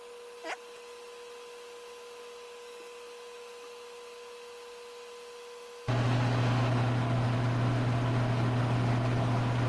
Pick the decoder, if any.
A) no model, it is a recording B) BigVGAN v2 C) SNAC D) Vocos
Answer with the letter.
A